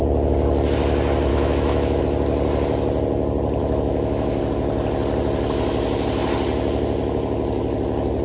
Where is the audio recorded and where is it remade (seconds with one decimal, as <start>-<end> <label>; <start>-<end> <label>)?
0.0-1.3 recorded; 1.3-2.0 remade; 2.0-3.6 recorded; 3.6-4.4 remade; 4.4-8.2 recorded